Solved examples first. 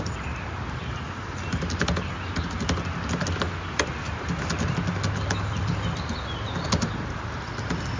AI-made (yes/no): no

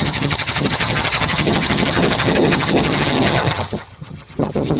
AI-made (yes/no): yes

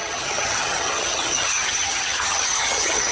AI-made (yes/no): yes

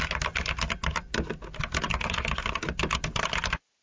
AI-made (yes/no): no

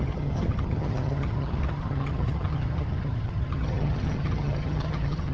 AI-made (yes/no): yes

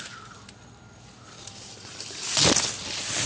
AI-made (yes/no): no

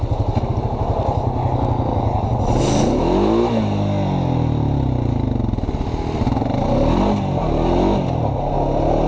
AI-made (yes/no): no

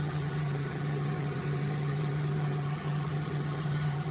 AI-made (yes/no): yes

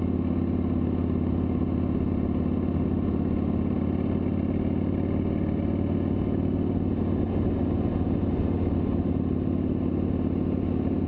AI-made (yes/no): no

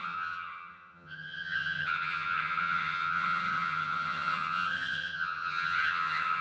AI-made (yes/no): yes